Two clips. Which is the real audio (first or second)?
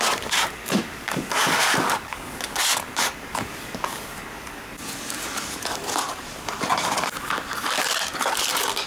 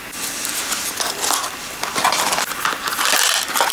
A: second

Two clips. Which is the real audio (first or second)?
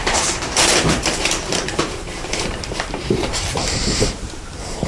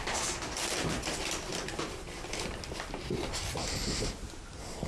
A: second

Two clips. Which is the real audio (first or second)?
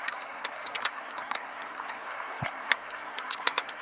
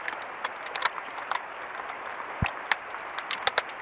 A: second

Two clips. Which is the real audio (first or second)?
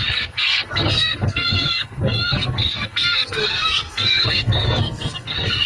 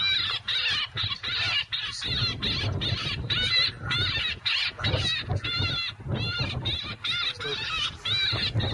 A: second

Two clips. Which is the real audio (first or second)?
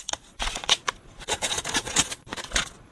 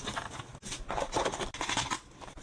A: second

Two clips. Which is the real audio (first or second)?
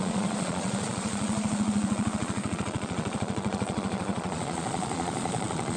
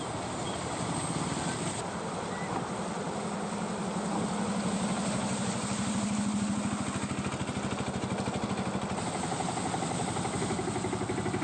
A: second